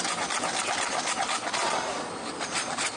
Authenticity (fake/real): real